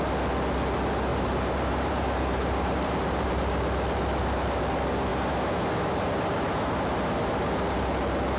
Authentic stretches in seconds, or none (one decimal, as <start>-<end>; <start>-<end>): 0.0-1.1; 3.4-8.4